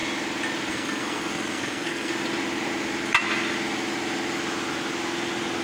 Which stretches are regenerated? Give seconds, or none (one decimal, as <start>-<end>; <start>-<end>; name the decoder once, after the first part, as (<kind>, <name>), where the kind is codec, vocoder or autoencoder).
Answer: 0.7-2.1 (codec, SNAC)